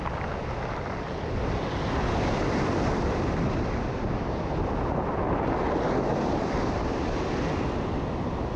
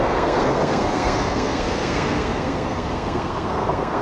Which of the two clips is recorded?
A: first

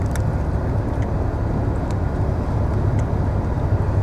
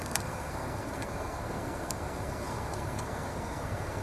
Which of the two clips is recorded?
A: first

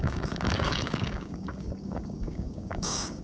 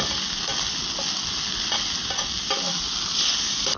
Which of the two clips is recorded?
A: second